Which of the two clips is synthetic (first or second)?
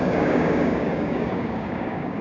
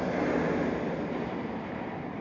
first